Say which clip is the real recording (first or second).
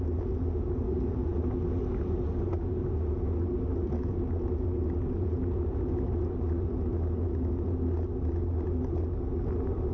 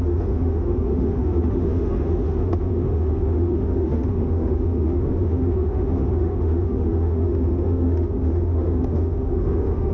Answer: first